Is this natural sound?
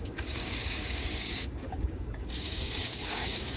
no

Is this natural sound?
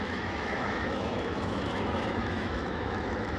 no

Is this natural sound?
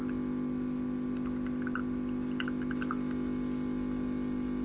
yes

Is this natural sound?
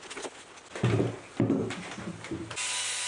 yes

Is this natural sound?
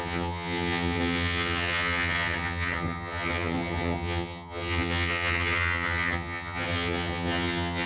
no